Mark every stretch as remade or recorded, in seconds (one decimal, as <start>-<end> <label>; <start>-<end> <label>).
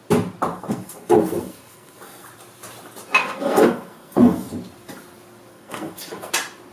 0.0-0.5 recorded; 0.5-2.3 remade; 2.3-3.2 recorded; 3.2-4.5 remade; 4.5-5.5 recorded; 5.5-6.3 remade; 6.3-6.7 recorded